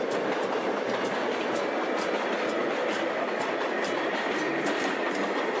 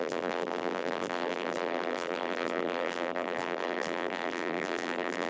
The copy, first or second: second